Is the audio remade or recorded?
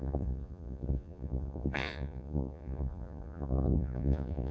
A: remade